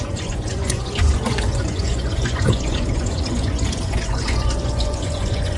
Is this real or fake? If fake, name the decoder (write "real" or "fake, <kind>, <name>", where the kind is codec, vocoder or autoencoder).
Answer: fake, vocoder, Vocos